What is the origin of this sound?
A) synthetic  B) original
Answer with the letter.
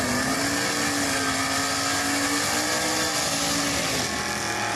B